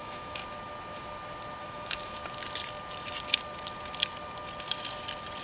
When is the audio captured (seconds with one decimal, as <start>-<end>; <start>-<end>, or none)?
0.4-1.6; 2.2-5.4